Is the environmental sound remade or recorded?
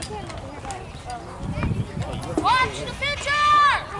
recorded